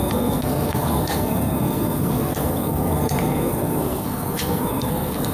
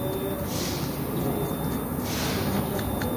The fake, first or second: first